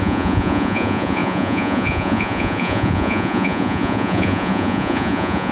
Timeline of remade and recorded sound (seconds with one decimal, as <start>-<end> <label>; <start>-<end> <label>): 0.0-5.5 remade